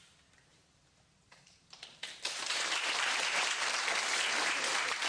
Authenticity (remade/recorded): remade